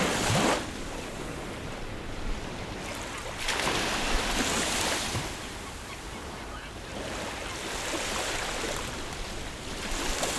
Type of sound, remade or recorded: recorded